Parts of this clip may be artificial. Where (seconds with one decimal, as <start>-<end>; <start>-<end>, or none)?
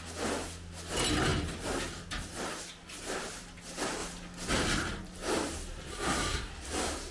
5.9-6.5